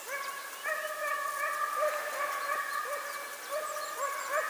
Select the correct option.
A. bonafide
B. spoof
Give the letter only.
A